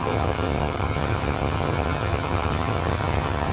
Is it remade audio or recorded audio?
remade